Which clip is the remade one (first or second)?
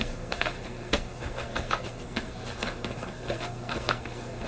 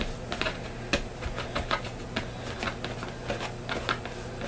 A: first